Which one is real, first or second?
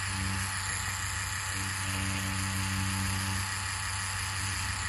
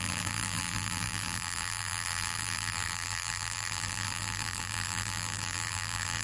first